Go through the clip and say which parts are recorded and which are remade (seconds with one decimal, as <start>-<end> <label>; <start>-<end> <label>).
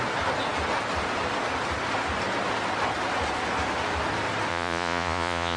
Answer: 0.0-4.5 recorded; 4.5-5.6 remade